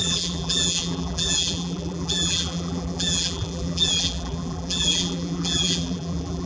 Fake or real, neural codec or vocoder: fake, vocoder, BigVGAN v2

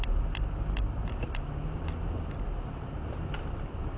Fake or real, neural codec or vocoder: real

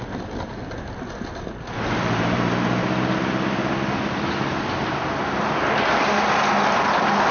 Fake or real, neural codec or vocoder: real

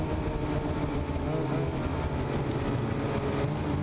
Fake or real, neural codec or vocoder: real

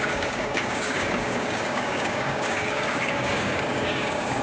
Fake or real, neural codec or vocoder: fake, codec, DAC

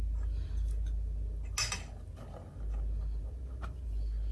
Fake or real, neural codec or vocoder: real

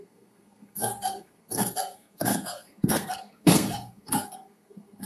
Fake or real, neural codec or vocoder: fake, codec, SNAC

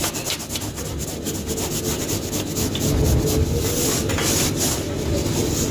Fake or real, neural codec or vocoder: real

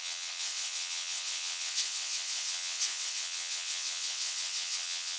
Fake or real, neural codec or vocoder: fake, vocoder, WaveNeXt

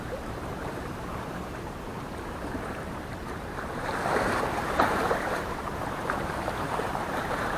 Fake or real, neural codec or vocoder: fake, vocoder, BigVGAN v2